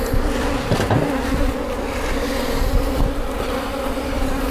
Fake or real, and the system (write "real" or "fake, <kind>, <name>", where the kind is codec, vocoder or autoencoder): real